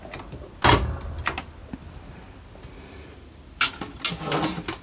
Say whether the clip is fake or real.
real